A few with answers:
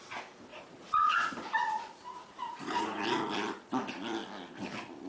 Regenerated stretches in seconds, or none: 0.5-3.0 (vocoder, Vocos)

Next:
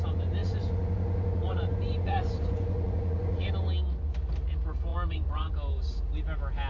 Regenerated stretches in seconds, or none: 0.4-3.5 (vocoder, Vocos); 4.9-5.5

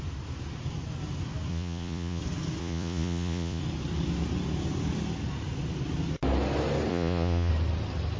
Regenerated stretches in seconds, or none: 1.5-2.2 (vocoder, Vocos); 2.6-3.6; 6.9-7.5